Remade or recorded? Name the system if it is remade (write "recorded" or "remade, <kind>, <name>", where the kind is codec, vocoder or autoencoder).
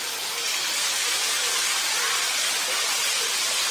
recorded